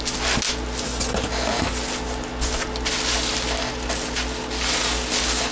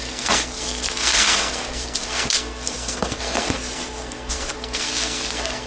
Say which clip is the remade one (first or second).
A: second